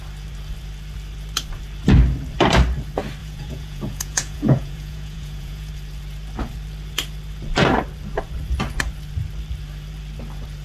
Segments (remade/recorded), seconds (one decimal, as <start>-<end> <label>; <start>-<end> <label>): 0.0-3.2 recorded; 3.2-5.7 remade; 5.7-10.6 recorded